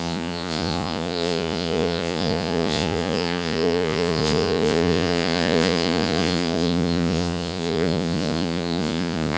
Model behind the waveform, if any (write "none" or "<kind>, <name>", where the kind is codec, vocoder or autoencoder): vocoder, Vocos